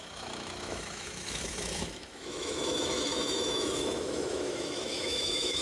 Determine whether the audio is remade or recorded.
remade